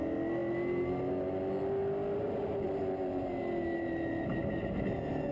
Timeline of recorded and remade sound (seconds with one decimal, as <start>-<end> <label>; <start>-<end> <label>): 0.0-5.3 recorded